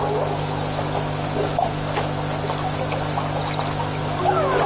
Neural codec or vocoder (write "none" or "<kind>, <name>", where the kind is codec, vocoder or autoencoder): none